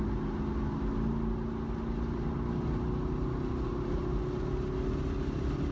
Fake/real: real